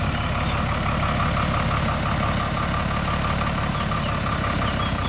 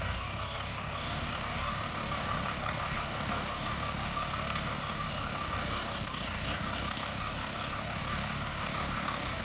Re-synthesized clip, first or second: second